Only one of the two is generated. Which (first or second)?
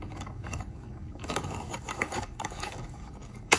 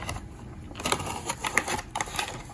first